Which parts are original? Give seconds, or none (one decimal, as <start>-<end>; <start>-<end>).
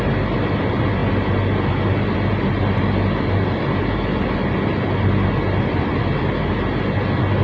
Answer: 0.0-7.4